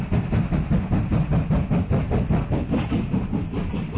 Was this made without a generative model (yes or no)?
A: yes